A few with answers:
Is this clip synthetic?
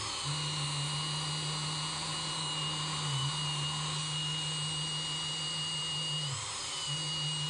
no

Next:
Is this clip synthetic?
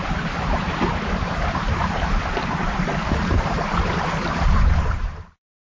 yes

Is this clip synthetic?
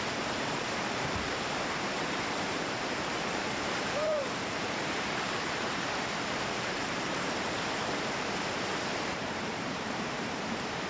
yes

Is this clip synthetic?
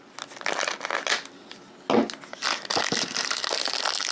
no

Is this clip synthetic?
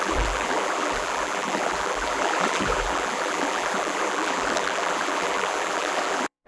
yes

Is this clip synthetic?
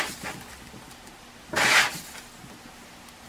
no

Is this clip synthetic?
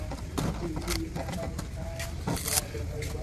no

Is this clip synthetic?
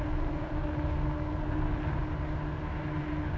no